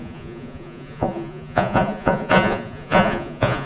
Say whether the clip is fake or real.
fake